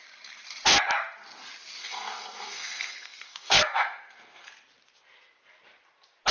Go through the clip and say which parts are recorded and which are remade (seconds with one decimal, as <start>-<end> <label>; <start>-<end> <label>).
0.0-1.8 recorded; 1.8-4.5 remade; 4.5-6.3 recorded